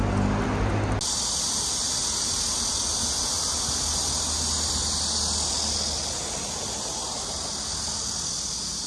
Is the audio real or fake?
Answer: real